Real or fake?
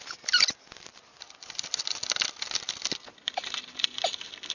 real